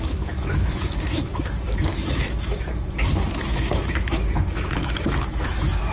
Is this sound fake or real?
fake